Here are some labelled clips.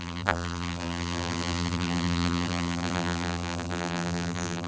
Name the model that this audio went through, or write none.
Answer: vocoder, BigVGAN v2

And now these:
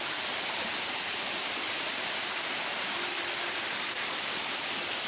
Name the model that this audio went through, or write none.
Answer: vocoder, BigVGAN v2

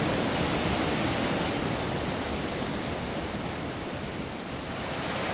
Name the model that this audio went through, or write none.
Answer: vocoder, BigVGAN v2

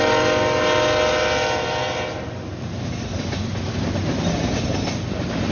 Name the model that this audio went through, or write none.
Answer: none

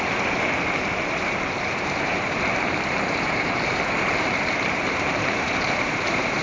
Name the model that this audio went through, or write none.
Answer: vocoder, BigVGAN v2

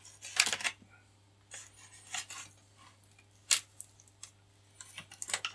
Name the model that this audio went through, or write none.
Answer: none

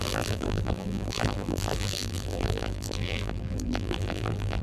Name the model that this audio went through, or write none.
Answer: vocoder, BigVGAN v2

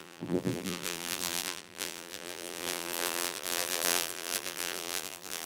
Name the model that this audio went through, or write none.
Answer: vocoder, BigVGAN v2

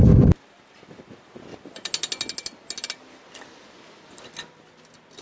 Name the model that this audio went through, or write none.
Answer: none